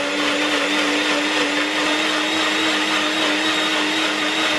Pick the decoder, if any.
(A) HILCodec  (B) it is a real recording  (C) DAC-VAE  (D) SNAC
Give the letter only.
B